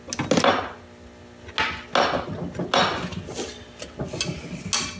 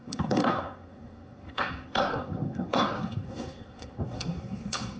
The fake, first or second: second